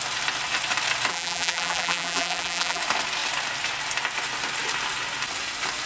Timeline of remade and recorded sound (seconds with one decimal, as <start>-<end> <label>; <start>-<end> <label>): 0.0-1.1 recorded; 1.1-2.8 remade; 2.8-5.9 recorded